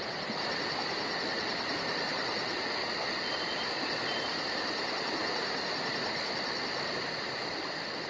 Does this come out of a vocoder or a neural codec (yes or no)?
no